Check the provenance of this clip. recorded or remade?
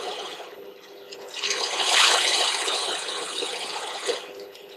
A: remade